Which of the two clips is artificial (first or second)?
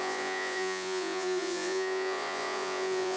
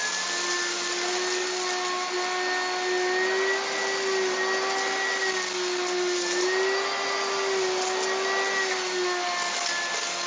first